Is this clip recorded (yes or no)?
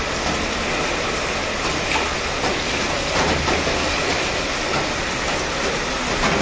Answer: yes